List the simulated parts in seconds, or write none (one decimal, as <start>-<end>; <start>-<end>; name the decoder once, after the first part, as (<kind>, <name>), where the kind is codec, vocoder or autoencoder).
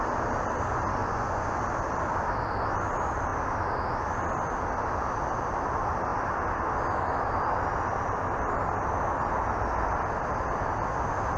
1.0-1.6 (vocoder, Vocos)